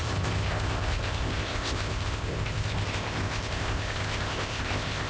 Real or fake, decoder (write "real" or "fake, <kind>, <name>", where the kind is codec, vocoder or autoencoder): fake, codec, ZipCodec